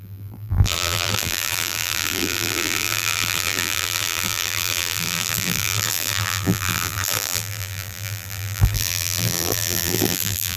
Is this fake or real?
fake